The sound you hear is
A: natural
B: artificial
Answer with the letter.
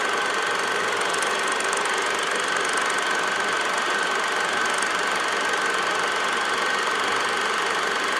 A